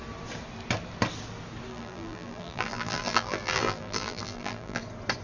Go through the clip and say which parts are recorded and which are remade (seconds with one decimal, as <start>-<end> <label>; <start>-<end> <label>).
0.0-1.7 recorded; 1.7-4.8 remade; 4.8-5.2 recorded

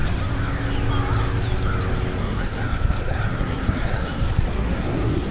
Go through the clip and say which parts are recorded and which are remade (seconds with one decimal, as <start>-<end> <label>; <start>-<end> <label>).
0.0-2.2 recorded; 2.2-5.3 remade

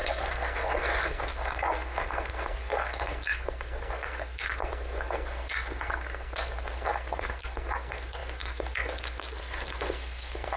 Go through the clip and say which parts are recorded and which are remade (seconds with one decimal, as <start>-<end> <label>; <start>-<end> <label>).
0.0-10.6 remade

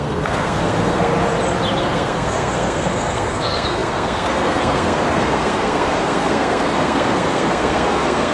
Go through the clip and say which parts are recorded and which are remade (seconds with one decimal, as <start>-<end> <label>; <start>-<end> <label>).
0.0-1.1 remade; 1.1-1.8 recorded; 1.8-8.3 remade

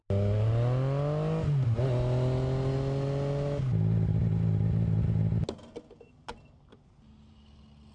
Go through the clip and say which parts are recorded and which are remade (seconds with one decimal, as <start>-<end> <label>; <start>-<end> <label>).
0.0-7.9 recorded

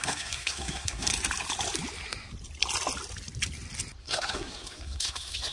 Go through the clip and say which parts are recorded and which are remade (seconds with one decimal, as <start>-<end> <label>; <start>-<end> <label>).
0.0-1.1 remade; 1.1-4.0 recorded; 4.0-5.5 remade